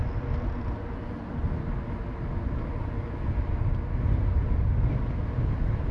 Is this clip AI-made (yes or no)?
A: no